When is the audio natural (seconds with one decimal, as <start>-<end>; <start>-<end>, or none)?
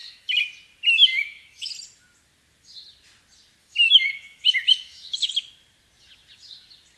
0.5-1.1; 1.7-3.6; 5.3-7.0